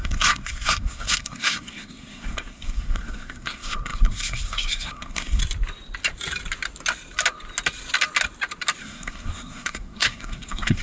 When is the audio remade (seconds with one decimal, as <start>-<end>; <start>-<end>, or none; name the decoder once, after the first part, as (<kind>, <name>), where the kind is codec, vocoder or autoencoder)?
0.0-5.4 (codec, SNAC); 8.8-10.8